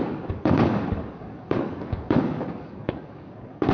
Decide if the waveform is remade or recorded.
remade